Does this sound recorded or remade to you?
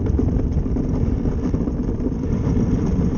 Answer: recorded